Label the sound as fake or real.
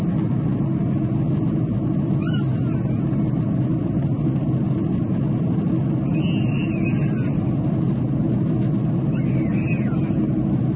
real